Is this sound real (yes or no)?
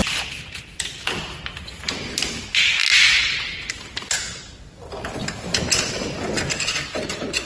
yes